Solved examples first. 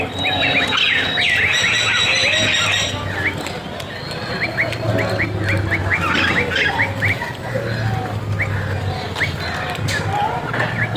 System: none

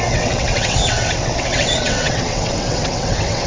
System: vocoder, WaveNeXt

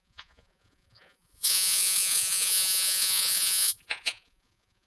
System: vocoder, Vocos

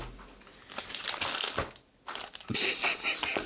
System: none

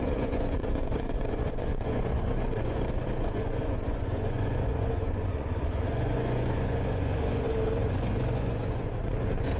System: vocoder, Vocos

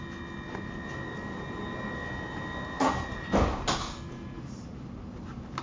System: none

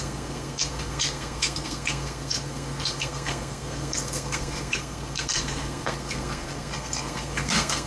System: codec, SNAC